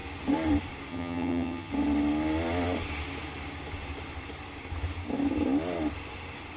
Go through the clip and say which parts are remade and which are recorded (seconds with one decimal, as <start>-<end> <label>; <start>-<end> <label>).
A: 0.0-0.9 recorded; 0.9-1.7 remade; 1.7-6.6 recorded